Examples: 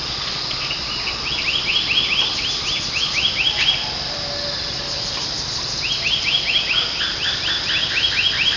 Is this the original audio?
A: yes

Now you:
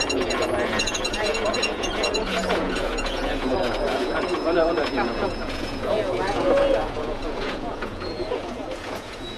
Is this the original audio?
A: no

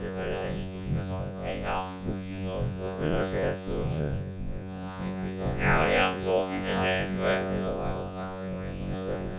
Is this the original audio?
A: no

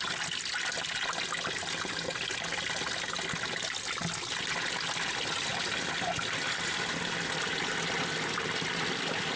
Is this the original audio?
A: yes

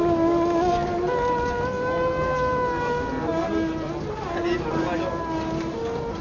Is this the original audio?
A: yes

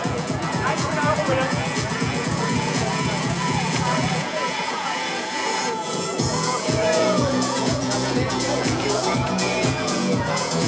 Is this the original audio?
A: no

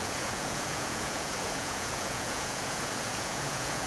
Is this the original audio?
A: no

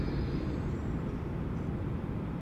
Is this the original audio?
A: yes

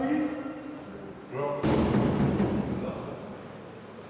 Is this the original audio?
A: yes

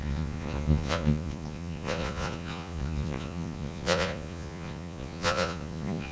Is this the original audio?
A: no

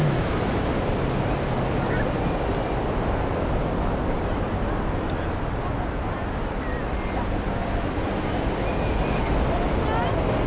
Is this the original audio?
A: yes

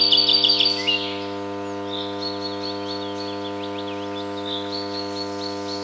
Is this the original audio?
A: yes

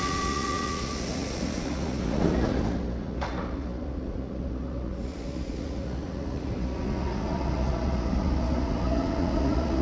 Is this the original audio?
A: no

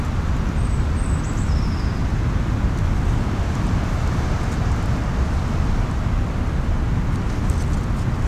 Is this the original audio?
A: yes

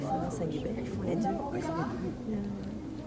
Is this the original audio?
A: yes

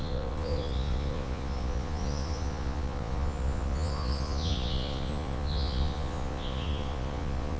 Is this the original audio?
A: no